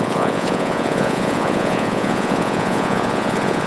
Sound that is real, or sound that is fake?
fake